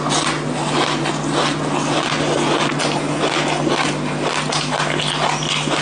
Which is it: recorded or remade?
recorded